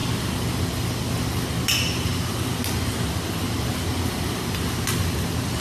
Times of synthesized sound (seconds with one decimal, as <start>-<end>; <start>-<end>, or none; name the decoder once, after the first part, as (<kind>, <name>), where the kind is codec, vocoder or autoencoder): none